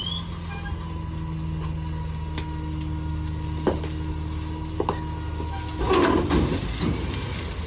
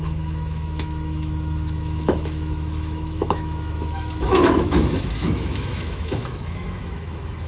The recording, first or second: first